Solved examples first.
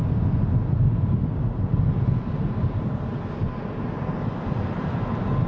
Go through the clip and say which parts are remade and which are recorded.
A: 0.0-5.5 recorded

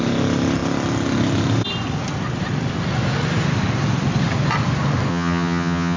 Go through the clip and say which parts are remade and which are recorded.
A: 0.0-5.1 recorded; 5.1-6.0 remade

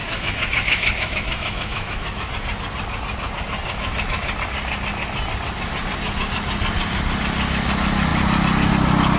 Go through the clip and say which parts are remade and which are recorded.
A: 0.0-2.3 remade; 2.3-9.2 recorded

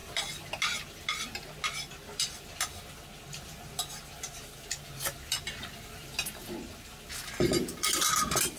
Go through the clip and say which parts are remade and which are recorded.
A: 0.0-8.6 recorded

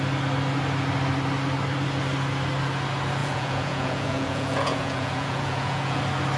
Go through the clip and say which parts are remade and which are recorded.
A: 0.0-3.2 recorded; 3.2-6.0 remade; 6.0-6.4 recorded

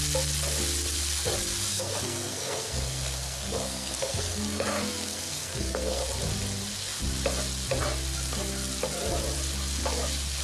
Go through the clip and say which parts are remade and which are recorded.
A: 0.0-1.7 recorded; 1.7-6.0 remade; 6.0-10.4 recorded